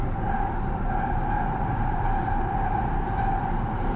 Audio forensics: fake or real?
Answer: real